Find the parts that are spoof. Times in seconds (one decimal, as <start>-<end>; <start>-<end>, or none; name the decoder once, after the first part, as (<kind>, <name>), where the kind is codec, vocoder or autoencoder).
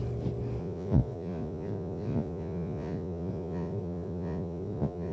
0.6-5.1 (vocoder, Vocos)